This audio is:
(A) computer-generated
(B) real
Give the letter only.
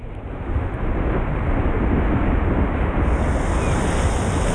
B